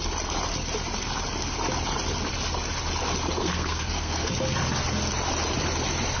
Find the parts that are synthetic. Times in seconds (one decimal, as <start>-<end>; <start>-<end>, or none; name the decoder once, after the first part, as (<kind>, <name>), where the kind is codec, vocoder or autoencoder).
3.4-4.3 (codec, SNAC)